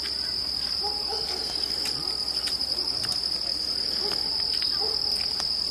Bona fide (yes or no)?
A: yes